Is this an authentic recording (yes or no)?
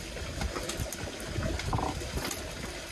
yes